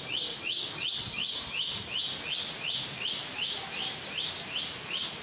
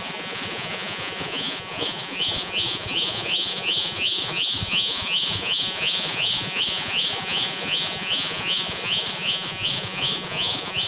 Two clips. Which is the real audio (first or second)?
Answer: first